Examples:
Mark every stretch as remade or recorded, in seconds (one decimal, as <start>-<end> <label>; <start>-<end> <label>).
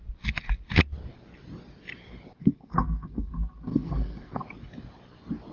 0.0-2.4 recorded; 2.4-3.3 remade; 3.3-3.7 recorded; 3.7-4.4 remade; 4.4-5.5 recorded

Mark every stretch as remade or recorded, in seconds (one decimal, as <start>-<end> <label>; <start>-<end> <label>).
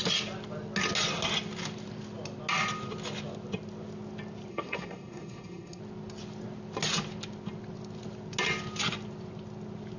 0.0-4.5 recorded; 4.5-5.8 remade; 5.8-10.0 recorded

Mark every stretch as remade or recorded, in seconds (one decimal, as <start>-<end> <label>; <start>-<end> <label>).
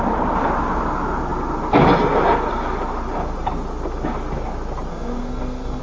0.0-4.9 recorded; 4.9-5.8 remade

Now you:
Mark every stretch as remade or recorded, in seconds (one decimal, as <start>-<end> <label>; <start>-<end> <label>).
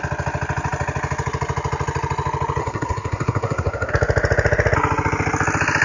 0.0-2.6 recorded; 2.6-3.9 remade; 3.9-5.8 recorded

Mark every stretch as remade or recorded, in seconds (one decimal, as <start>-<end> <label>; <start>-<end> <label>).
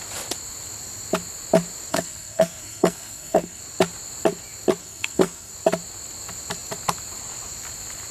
0.0-1.9 recorded; 1.9-3.6 remade; 3.6-4.8 recorded; 4.8-5.5 remade; 5.5-8.1 recorded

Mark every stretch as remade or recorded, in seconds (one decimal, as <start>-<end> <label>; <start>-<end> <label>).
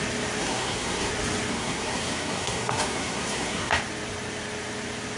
0.0-0.4 recorded; 0.4-1.1 remade; 1.1-1.5 recorded; 1.5-3.8 remade; 3.8-5.2 recorded